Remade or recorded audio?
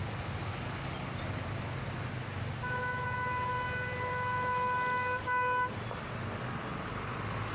recorded